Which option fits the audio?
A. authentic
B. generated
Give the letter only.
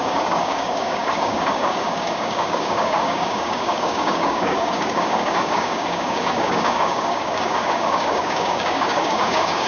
B